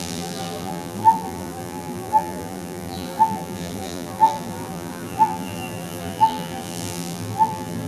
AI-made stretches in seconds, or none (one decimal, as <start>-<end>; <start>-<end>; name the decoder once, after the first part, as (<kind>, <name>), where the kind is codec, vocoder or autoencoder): 0.0-7.9 (vocoder, BigVGAN v2)